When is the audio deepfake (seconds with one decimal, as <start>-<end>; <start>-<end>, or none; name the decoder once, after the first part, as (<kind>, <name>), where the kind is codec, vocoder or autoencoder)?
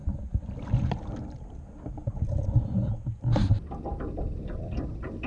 3.9-4.5 (vocoder, BigVGAN v2)